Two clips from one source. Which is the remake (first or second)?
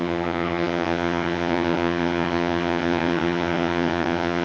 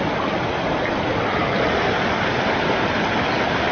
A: first